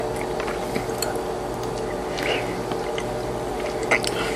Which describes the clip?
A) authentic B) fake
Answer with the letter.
A